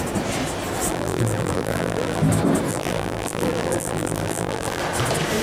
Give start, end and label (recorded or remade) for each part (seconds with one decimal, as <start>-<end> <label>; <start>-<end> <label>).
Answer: 0.0-0.9 recorded; 0.9-2.2 remade; 2.2-2.7 recorded; 2.7-4.8 remade; 4.8-5.4 recorded